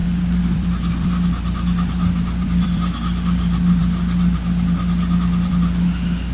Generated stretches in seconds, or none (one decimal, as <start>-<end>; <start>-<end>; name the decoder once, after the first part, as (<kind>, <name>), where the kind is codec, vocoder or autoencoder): 0.0-3.8 (vocoder, BigVGAN v2); 5.5-6.3